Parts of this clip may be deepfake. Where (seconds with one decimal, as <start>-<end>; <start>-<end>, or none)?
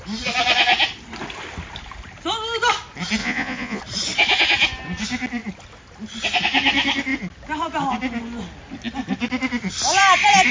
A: 3.2-3.8